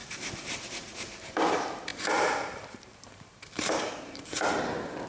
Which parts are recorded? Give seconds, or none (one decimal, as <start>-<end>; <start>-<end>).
none